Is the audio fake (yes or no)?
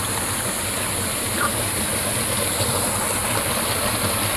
no